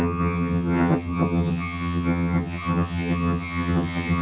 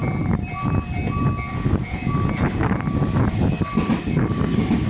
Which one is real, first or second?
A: second